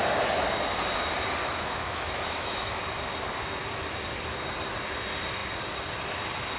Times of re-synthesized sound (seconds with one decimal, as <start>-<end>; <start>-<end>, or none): 1.4-2.8